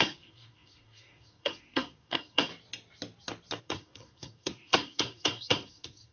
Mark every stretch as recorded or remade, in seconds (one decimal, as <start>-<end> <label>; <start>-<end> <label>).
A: 0.0-2.5 remade; 2.5-3.6 recorded; 3.6-6.1 remade